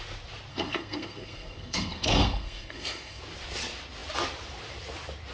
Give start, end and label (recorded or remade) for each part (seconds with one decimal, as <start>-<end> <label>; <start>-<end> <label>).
0.0-0.5 recorded; 0.5-3.2 remade; 3.2-5.3 recorded